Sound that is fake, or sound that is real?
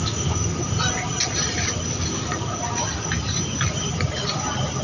real